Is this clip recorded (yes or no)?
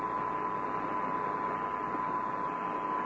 yes